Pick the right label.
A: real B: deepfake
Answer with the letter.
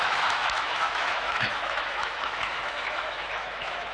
B